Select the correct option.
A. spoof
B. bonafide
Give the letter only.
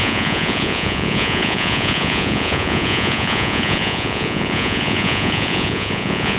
A